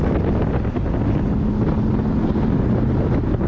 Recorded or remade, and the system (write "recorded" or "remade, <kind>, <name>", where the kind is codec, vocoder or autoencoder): recorded